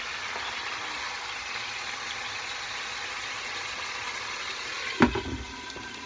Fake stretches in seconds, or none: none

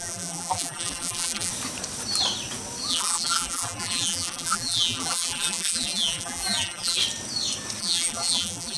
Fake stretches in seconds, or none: 0.0-1.5 (vocoder, BigVGAN v2); 2.9-7.0; 7.8-8.8